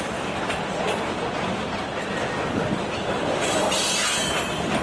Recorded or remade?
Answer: recorded